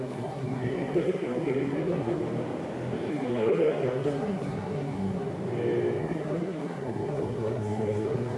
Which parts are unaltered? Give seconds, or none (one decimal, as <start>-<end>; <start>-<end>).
2.2-3.1; 5.3-6.0